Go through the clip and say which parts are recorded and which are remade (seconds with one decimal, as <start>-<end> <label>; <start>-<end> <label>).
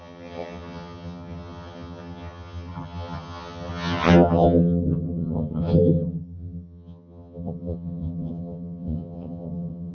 0.0-9.9 remade